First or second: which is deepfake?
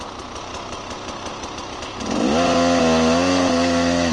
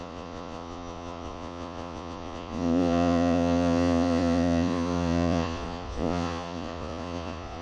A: second